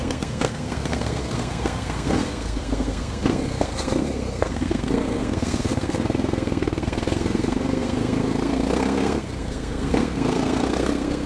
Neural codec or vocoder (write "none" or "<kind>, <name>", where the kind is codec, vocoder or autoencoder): codec, SNAC